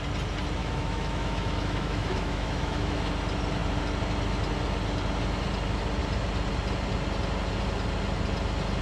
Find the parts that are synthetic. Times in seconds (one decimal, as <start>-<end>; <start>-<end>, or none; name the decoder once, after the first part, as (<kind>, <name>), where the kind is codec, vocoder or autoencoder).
0.6-3.1 (autoencoder, DAC-VAE)